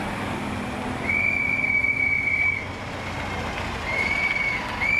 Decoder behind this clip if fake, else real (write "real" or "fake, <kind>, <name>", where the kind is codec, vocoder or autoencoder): real